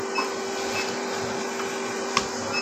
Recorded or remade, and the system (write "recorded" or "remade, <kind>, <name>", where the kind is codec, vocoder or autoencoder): recorded